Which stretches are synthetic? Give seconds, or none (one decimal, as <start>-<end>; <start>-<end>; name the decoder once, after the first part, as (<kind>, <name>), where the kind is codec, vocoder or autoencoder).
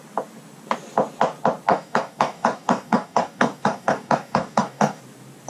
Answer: 1.7-5.0 (codec, DAC)